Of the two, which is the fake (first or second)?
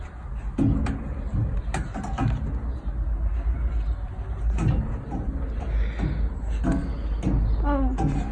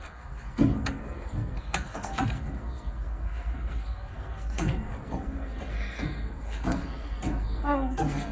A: second